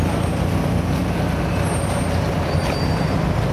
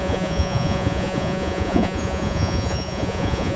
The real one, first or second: first